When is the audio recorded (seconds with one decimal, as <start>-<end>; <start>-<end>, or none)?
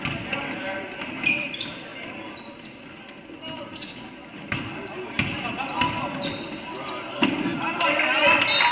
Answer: 0.0-8.7